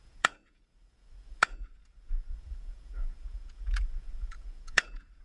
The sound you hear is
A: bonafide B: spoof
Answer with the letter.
B